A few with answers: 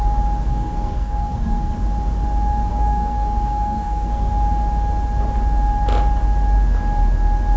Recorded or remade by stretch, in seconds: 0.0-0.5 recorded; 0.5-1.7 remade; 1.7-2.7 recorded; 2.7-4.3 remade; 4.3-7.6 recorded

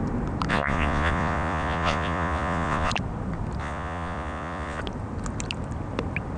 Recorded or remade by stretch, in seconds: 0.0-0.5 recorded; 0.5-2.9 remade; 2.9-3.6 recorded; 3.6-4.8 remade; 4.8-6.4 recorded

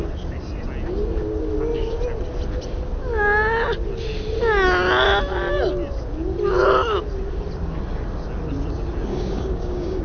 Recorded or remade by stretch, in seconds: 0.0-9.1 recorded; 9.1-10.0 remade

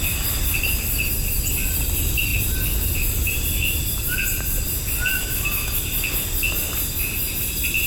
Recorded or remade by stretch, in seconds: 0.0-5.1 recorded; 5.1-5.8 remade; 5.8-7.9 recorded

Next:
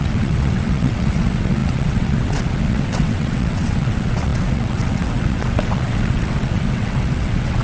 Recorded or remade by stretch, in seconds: 0.0-7.6 remade

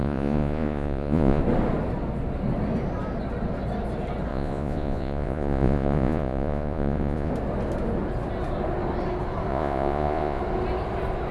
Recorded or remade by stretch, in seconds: 0.0-1.4 remade; 1.4-4.3 recorded; 4.3-7.3 remade; 7.3-9.5 recorded; 9.5-10.4 remade; 10.4-11.3 recorded